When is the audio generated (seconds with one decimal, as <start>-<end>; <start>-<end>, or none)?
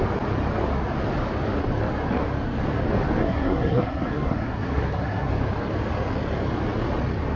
3.2-5.3